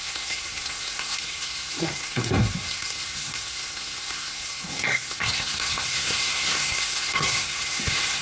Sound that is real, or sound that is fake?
fake